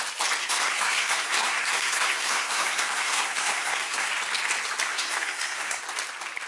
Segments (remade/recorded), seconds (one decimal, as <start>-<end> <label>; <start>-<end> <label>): 0.0-0.4 recorded; 0.4-4.1 remade; 4.1-4.9 recorded; 4.9-5.8 remade; 5.8-6.5 recorded